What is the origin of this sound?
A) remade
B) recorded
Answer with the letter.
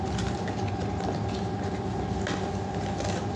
B